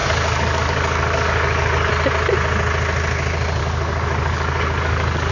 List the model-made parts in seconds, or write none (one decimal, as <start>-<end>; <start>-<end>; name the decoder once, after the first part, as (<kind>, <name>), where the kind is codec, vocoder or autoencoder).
0.0-1.9 (codec, DAC); 3.6-5.3